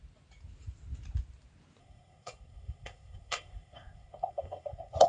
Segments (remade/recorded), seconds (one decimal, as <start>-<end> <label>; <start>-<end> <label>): 0.0-1.8 recorded; 1.8-5.1 remade